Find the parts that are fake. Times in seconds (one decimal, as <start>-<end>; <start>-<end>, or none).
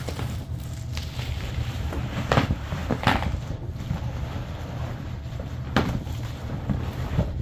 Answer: 0.0-2.8; 5.3-7.4